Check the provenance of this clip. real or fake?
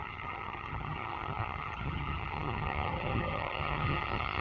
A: fake